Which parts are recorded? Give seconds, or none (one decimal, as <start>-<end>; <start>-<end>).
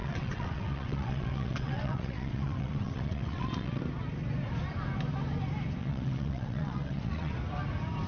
3.8-5.8; 7.3-8.1